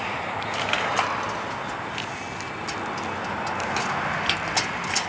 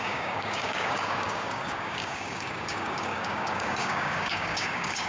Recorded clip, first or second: first